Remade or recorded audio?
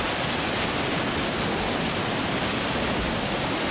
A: recorded